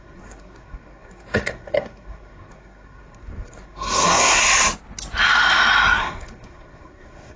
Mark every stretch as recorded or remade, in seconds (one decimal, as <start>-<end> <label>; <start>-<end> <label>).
0.0-4.4 remade; 4.4-6.0 recorded; 6.0-7.4 remade